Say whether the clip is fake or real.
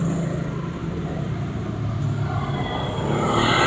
real